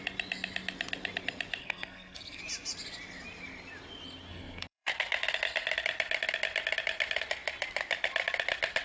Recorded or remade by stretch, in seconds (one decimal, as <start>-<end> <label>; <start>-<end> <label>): 0.0-1.6 recorded; 1.6-2.4 remade; 2.4-4.3 recorded; 4.3-4.9 remade; 4.9-8.8 recorded